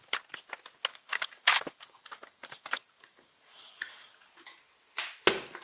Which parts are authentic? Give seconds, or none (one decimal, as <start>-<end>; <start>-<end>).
0.0-0.9; 4.3-5.6